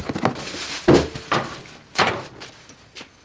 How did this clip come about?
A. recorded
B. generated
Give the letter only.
A